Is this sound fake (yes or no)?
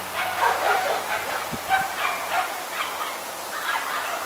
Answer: no